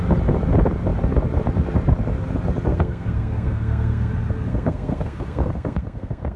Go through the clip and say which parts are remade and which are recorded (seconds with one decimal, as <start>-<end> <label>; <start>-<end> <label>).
0.0-2.7 recorded; 2.7-4.1 remade; 4.1-4.5 recorded; 4.5-6.4 remade